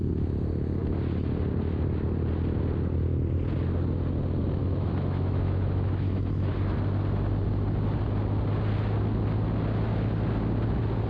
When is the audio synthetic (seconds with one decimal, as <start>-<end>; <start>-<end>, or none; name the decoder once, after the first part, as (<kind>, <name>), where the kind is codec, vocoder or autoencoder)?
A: 4.6-6.5 (autoencoder, DAC-VAE)